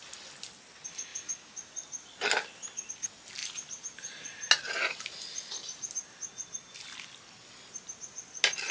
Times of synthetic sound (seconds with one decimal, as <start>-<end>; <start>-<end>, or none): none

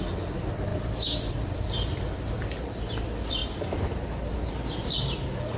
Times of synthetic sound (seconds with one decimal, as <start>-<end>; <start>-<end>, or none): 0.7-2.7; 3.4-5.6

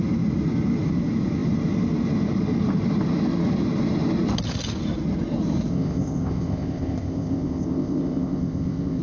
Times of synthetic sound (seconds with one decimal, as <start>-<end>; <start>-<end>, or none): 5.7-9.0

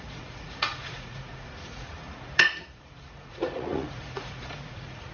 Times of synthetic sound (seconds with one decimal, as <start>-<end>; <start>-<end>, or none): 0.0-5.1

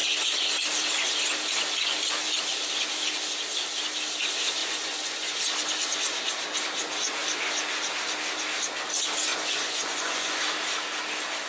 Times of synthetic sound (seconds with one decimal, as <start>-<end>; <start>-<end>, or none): 4.6-5.4; 9.3-10.4

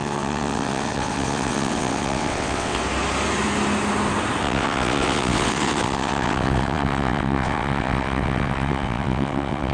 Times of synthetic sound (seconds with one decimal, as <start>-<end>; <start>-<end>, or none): 0.0-2.8; 4.4-9.7

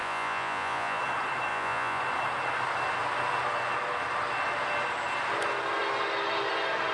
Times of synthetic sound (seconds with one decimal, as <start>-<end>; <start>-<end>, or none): 0.0-1.0; 1.5-2.0

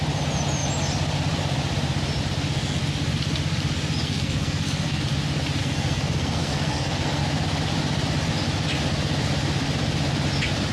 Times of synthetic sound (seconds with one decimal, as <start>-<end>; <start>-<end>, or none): 4.0-5.0; 5.6-7.2